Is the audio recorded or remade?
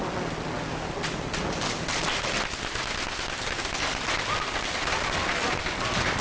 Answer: recorded